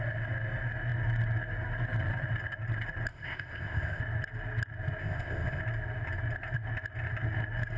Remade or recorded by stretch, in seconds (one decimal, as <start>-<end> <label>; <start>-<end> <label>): 0.0-3.1 recorded; 3.1-4.0 remade; 4.0-5.0 recorded; 5.0-5.6 remade; 5.6-7.8 recorded